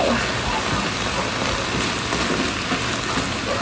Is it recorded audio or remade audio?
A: recorded